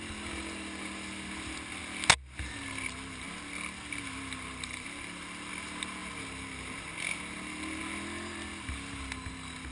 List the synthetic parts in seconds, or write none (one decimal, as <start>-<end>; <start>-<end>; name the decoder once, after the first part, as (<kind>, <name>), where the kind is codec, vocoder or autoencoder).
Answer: none